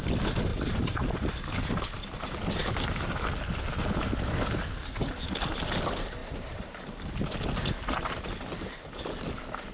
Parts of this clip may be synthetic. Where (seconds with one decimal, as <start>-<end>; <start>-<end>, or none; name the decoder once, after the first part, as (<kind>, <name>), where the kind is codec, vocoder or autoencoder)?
0.5-1.3 (vocoder, BigVGAN v2); 6.2-7.1